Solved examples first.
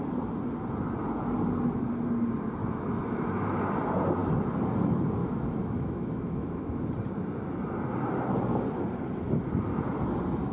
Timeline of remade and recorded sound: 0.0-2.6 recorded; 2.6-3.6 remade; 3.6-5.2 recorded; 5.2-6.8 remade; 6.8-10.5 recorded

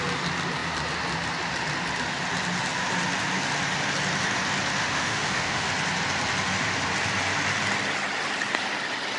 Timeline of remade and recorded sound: 0.0-4.8 recorded; 4.8-5.7 remade; 5.7-9.2 recorded